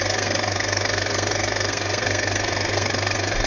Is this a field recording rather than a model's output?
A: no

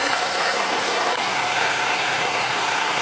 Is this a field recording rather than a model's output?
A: no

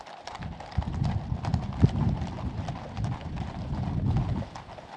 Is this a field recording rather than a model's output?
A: yes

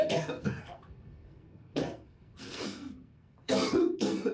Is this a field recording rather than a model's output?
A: no